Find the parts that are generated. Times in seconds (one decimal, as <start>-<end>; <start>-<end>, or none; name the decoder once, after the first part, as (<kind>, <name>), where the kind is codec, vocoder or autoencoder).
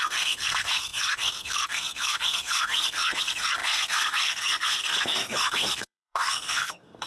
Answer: 0.0-7.1 (codec, SNAC)